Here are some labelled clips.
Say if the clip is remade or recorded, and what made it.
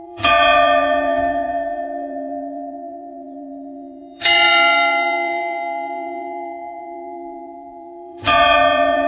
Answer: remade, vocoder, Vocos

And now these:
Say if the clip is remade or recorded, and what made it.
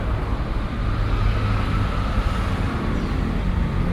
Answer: recorded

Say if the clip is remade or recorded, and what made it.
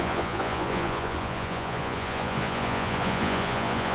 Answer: remade, vocoder, Vocos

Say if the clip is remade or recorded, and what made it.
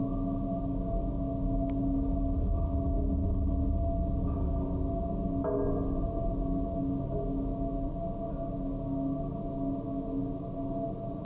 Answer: recorded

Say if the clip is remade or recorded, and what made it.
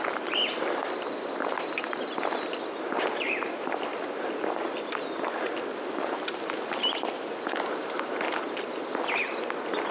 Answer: recorded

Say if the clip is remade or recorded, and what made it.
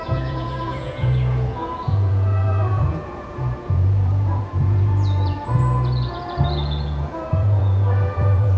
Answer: remade, vocoder, Vocos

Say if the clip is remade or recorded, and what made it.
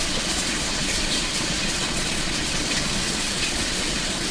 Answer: remade, vocoder, Vocos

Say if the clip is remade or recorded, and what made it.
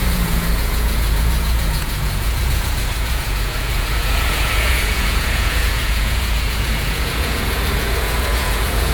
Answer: remade, vocoder, Vocos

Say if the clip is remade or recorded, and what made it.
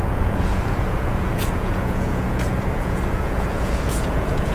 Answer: remade, vocoder, Vocos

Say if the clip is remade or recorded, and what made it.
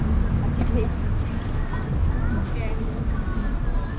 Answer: recorded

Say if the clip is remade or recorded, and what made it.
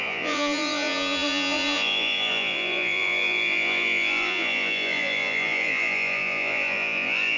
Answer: remade, vocoder, Vocos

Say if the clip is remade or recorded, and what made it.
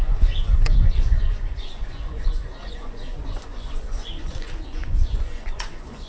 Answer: remade, vocoder, Vocos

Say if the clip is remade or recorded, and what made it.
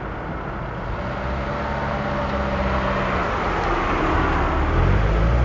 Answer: recorded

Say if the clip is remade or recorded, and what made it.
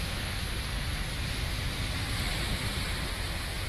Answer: recorded